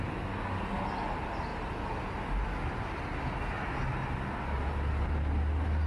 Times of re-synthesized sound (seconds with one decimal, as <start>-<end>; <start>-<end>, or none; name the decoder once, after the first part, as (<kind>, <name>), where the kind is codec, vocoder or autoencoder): none